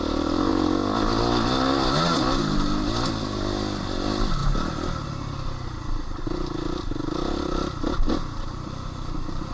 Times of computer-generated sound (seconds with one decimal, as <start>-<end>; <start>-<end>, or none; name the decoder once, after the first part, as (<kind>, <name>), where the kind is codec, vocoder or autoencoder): none